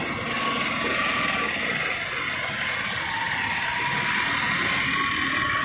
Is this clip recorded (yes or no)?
yes